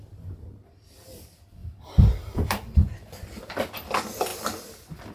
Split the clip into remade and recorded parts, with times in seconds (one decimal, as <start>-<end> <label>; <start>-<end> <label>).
0.0-1.6 recorded; 1.6-3.5 remade; 3.5-4.3 recorded; 4.3-5.1 remade